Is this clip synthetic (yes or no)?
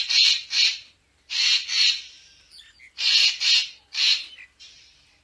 no